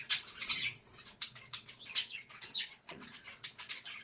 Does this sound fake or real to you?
fake